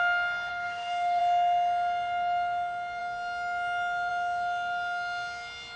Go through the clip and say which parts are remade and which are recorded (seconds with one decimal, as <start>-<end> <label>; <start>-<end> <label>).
0.0-0.5 recorded; 0.5-1.2 remade; 1.2-5.8 recorded